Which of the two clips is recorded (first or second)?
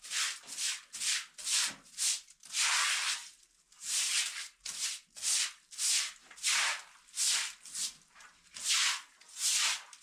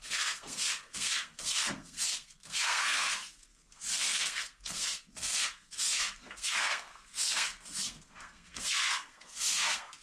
first